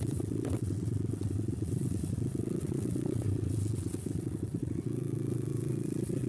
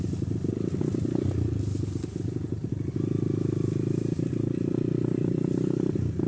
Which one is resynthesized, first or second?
first